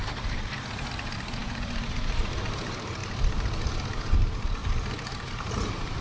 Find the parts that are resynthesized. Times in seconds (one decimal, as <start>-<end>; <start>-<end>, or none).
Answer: 0.0-6.0